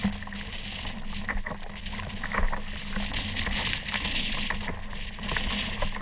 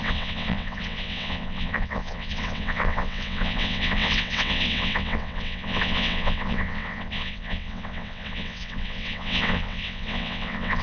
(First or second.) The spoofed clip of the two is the second